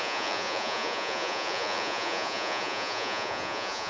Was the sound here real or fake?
fake